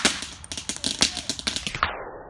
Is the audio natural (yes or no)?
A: yes